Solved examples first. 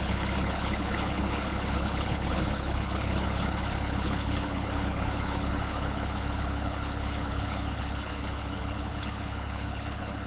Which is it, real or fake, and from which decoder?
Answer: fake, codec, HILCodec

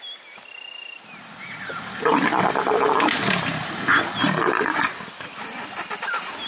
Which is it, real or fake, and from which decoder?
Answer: real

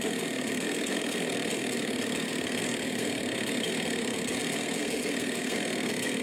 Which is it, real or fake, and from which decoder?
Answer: fake, codec, SNAC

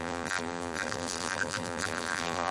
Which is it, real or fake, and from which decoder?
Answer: fake, vocoder, BigVGAN v2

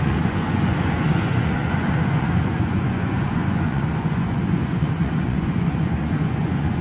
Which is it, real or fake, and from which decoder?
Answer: fake, vocoder, Vocos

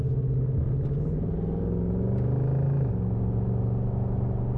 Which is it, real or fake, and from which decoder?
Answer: real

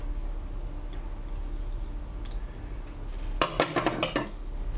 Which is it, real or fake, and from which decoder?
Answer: real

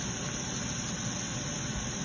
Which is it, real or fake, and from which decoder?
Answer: real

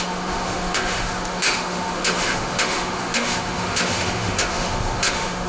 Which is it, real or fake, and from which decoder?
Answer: fake, autoencoder, DAC-VAE